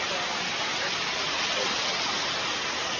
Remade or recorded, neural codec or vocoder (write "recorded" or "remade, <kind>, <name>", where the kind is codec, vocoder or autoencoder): recorded